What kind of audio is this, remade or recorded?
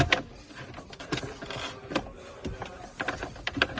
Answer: recorded